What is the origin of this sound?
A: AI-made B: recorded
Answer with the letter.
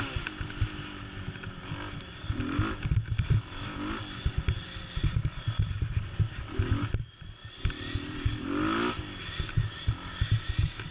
B